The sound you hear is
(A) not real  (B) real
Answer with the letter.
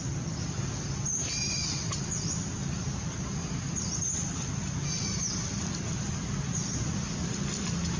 B